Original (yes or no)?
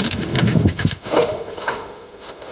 no